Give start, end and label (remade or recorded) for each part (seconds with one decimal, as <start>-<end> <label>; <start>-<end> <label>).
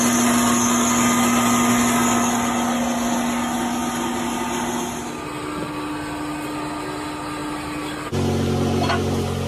0.0-9.5 recorded